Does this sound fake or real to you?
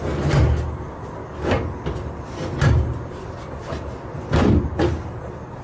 real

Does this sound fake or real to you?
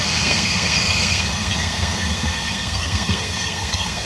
fake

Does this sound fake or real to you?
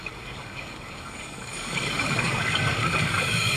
fake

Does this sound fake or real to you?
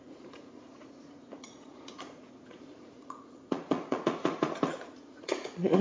fake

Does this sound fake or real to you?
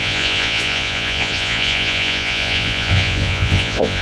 fake